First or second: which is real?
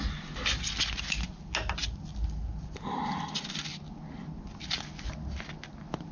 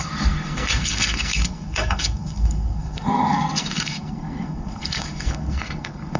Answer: first